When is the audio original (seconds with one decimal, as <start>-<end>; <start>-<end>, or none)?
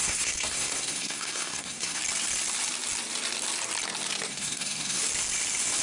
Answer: 2.0-4.3; 5.0-5.8